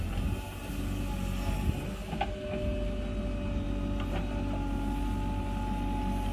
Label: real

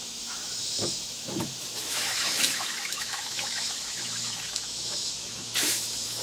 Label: fake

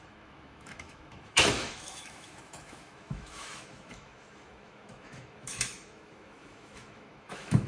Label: fake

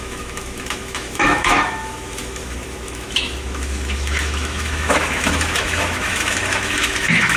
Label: fake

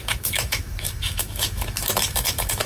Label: fake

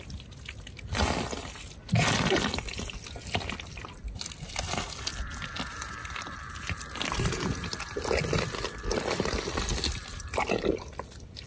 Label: real